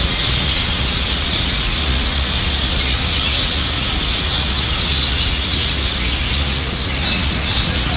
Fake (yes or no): yes